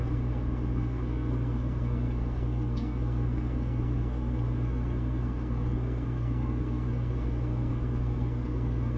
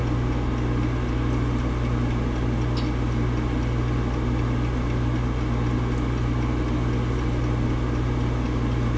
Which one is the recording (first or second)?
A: second